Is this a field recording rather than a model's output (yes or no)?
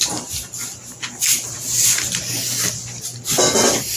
yes